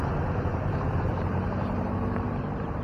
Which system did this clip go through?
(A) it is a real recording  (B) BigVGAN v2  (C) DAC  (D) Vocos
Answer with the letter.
B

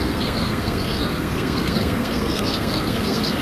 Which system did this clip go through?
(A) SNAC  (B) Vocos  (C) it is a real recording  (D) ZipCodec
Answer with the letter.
A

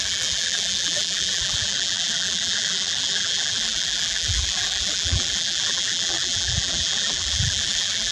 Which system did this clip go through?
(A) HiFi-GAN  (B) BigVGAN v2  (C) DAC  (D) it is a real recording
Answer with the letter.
B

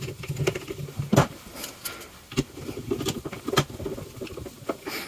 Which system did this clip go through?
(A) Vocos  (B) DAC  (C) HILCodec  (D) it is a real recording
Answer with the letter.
D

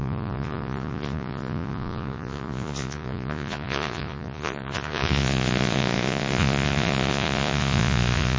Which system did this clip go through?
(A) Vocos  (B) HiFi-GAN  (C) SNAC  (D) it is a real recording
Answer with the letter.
A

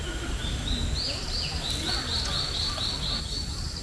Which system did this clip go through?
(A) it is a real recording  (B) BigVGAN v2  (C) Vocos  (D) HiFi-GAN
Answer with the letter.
A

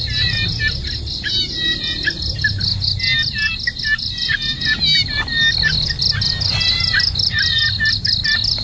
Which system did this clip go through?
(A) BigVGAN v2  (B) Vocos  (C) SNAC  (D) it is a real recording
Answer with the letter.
D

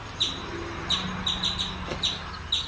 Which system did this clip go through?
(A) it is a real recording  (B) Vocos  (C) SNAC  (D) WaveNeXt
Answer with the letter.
A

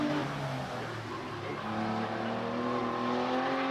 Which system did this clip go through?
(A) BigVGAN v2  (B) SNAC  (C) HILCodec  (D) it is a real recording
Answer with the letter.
A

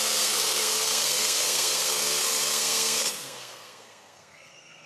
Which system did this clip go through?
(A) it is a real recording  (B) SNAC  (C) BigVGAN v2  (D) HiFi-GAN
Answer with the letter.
B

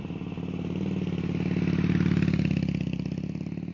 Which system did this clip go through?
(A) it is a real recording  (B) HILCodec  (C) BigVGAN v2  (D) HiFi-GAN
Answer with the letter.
A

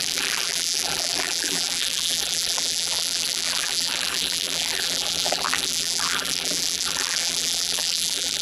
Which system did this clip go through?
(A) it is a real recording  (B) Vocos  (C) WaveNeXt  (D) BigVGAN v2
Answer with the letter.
D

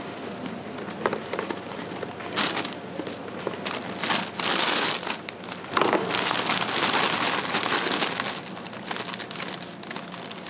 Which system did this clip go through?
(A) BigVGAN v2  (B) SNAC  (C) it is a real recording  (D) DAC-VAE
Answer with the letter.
C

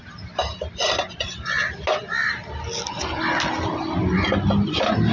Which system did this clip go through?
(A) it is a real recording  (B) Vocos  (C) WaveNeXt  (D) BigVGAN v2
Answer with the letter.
A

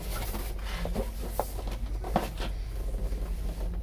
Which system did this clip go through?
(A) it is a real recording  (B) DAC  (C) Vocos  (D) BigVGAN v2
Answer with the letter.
A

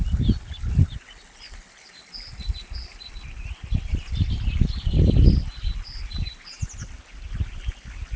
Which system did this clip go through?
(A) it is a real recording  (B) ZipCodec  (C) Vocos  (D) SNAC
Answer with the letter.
A